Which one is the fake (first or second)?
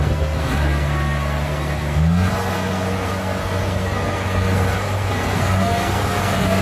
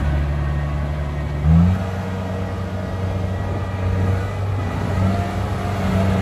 first